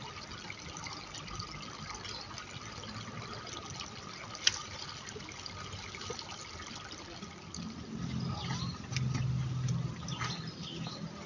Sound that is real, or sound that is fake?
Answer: real